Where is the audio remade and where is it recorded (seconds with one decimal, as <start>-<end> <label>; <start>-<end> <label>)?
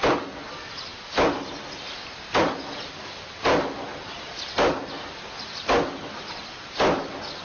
0.0-7.4 recorded